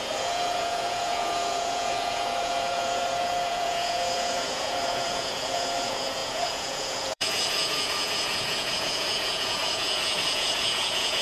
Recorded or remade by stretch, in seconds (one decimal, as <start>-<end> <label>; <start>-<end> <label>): 0.0-11.2 remade